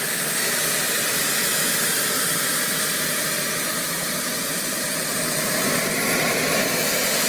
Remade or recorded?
recorded